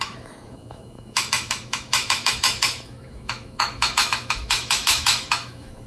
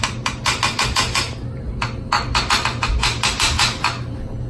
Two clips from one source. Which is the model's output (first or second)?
first